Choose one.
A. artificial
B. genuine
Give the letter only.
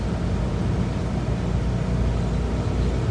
B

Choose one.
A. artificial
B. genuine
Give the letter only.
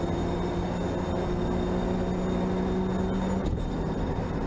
B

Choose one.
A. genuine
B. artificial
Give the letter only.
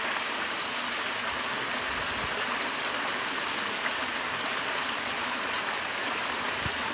A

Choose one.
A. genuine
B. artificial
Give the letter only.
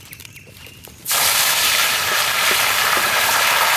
B